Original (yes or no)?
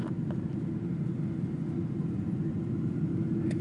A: yes